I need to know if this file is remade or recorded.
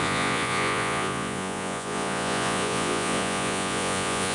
remade